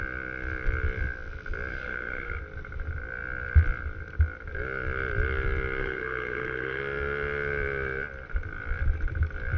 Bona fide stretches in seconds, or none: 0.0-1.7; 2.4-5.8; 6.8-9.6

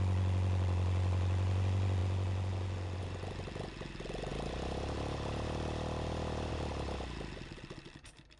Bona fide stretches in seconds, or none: 0.0-8.4

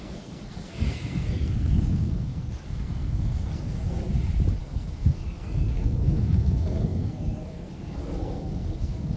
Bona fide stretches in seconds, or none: 4.0-4.6

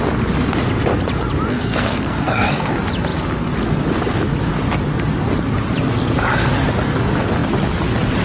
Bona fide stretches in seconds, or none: 0.0-1.5; 2.7-8.2

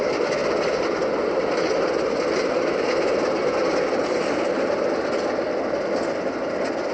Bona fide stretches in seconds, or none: 0.0-6.9